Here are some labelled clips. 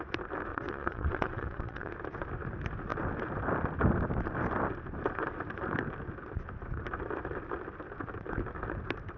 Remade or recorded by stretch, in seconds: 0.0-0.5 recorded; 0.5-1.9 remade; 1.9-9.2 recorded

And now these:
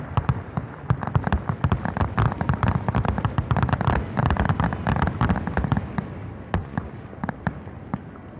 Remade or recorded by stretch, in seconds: 0.0-6.6 recorded; 6.6-7.1 remade; 7.1-8.4 recorded

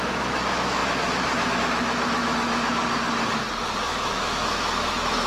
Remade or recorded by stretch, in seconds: 0.0-2.8 remade; 2.8-3.8 recorded; 3.8-5.3 remade

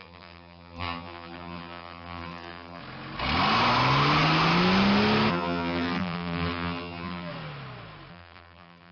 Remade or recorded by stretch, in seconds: 0.0-2.8 remade; 2.8-5.3 recorded; 5.3-7.3 remade; 7.3-8.1 recorded; 8.1-8.9 remade

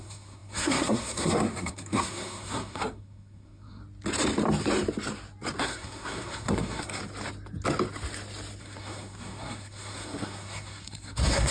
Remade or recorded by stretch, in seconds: 0.0-3.8 remade; 3.8-5.6 recorded; 5.6-7.0 remade; 7.0-8.6 recorded; 8.6-11.5 remade

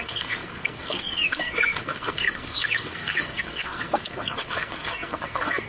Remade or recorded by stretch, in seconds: 0.0-5.7 remade

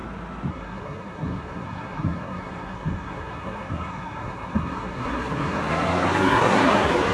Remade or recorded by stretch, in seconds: 0.0-0.5 recorded; 0.5-7.1 remade

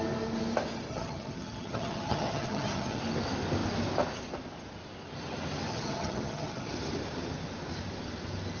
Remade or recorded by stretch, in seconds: 0.0-0.9 recorded; 0.9-3.0 remade; 3.0-5.7 recorded; 5.7-6.7 remade; 6.7-8.6 recorded